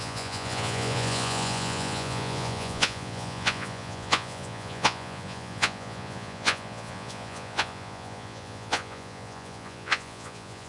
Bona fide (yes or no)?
no